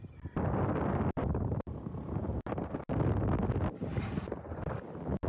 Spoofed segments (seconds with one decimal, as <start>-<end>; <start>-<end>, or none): 1.2-2.3; 3.9-4.5